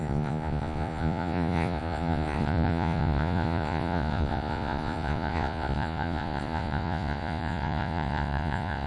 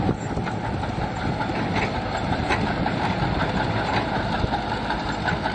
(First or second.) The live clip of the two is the second